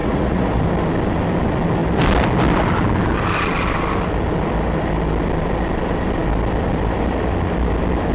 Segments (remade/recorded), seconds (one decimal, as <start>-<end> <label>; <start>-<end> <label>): 0.0-0.6 remade; 0.6-8.1 recorded